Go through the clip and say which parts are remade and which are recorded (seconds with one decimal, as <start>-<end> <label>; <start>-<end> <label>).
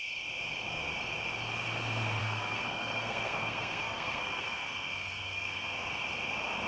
0.0-2.2 recorded; 2.2-6.0 remade; 6.0-6.7 recorded